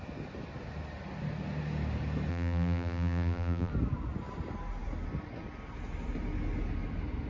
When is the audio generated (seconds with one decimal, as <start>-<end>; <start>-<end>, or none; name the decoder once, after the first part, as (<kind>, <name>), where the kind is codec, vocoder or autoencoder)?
2.3-3.7 (vocoder, BigVGAN v2)